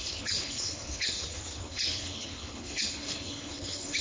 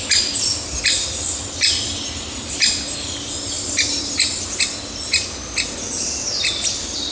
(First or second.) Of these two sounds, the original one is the second